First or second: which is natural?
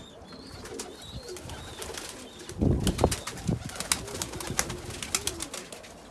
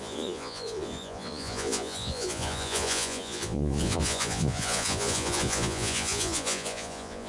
first